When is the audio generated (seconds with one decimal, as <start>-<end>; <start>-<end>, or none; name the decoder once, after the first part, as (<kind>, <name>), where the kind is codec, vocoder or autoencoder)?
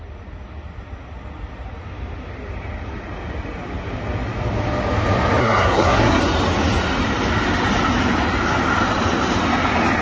5.4-6.2 (codec, SNAC)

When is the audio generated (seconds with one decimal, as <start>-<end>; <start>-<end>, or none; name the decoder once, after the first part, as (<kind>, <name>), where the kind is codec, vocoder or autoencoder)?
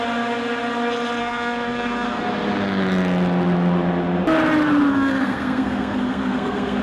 1.2-2.2 (codec, SNAC); 4.9-6.8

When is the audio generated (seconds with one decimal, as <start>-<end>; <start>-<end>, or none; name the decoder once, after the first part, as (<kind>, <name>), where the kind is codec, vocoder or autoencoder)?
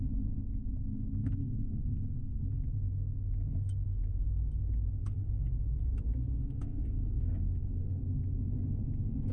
1.2-2.4 (codec, SNAC); 5.0-5.5; 6.4-8.0